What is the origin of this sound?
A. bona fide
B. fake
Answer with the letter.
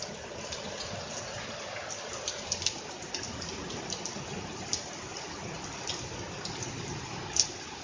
A